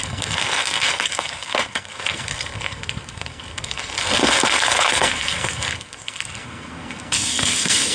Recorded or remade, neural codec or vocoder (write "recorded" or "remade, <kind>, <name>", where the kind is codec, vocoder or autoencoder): remade, codec, SNAC